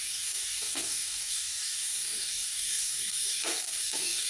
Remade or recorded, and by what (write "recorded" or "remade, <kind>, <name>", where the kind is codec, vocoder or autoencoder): remade, codec, DAC